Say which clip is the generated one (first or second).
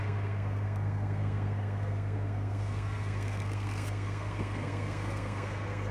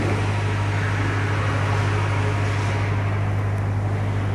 first